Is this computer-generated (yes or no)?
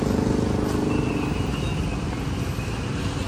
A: no